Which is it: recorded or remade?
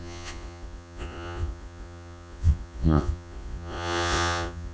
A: remade